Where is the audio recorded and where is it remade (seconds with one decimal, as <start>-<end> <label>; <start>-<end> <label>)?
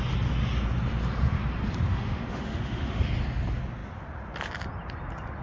0.0-1.9 recorded; 1.9-3.0 remade; 3.0-5.4 recorded